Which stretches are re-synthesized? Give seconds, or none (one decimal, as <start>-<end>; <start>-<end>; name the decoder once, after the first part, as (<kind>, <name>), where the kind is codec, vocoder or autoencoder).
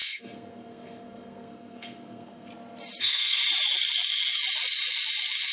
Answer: 0.0-2.5 (codec, SNAC); 3.0-3.4